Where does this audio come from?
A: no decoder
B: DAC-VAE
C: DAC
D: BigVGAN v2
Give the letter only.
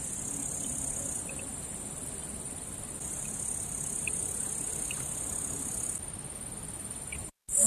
A